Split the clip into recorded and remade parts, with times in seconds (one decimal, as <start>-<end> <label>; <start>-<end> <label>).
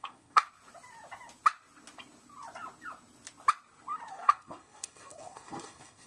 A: 0.0-0.4 remade; 0.4-4.1 recorded; 4.1-6.1 remade